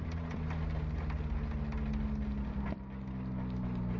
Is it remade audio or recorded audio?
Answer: recorded